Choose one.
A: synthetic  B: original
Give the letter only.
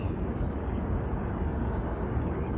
A